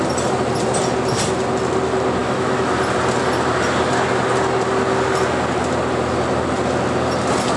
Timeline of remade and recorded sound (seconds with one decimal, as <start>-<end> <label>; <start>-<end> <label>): 0.0-2.2 recorded; 2.2-2.7 remade; 2.7-7.6 recorded